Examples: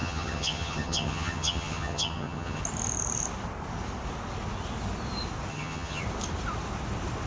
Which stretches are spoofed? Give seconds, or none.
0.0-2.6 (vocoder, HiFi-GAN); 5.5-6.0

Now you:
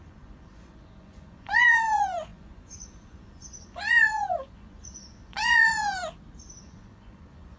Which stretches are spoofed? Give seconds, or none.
0.0-6.0 (vocoder, Vocos); 6.6-7.6